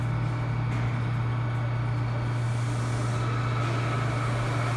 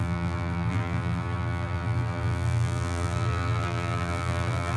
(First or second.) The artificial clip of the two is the second